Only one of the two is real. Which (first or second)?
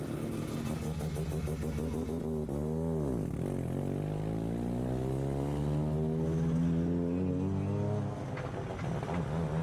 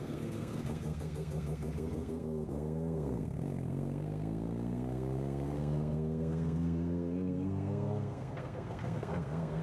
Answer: first